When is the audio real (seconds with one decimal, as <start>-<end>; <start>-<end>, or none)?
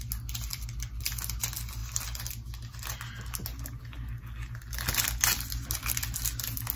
0.0-0.5; 1.0-6.8